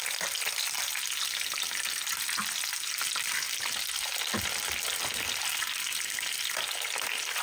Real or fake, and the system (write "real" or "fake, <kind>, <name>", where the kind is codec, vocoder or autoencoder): real